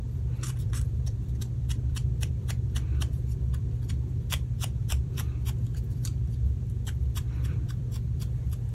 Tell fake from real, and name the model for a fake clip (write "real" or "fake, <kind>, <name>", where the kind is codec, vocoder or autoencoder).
fake, vocoder, BigVGAN v2